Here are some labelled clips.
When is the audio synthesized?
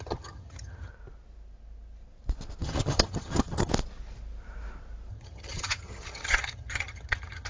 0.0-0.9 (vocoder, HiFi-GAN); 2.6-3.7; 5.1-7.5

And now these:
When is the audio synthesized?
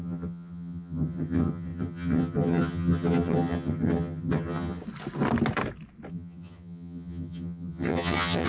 0.0-4.8 (vocoder, HiFi-GAN); 6.1-8.5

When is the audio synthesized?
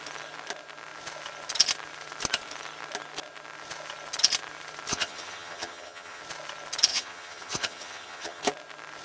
4.9-6.2 (vocoder, HiFi-GAN); 6.9-8.4